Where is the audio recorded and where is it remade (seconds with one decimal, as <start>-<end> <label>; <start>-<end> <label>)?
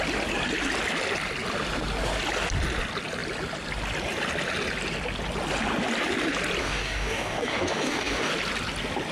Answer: 0.0-6.6 recorded; 6.6-8.3 remade; 8.3-9.1 recorded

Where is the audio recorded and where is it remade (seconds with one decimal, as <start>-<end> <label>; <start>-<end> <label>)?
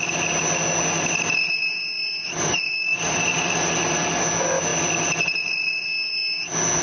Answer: 0.0-1.6 recorded; 1.6-4.2 remade; 4.2-6.8 recorded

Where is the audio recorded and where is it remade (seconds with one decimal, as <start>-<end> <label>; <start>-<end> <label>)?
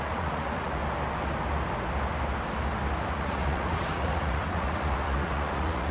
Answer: 0.0-0.8 remade; 0.8-3.1 recorded; 3.1-5.9 remade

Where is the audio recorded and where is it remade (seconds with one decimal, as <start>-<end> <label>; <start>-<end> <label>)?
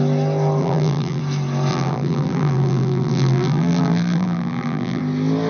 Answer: 0.0-0.6 recorded; 0.6-1.2 remade; 1.2-1.7 recorded; 1.7-5.0 remade; 5.0-5.5 recorded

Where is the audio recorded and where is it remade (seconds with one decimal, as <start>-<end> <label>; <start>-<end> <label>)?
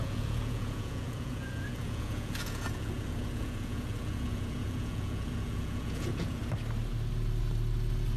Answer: 0.0-6.4 remade; 6.4-8.2 recorded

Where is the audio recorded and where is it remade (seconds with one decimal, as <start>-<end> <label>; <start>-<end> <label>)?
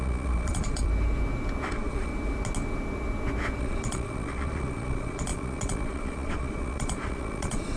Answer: 0.0-0.9 remade; 0.9-1.7 recorded; 1.7-2.1 remade; 2.1-3.6 recorded; 3.6-7.8 remade